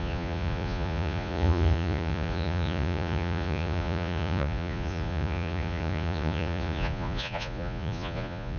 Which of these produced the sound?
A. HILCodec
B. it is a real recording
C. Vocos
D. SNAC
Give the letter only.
C